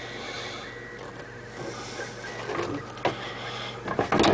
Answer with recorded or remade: recorded